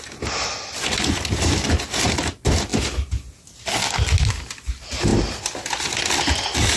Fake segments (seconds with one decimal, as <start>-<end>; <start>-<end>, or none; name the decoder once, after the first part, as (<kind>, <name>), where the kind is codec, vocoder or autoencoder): none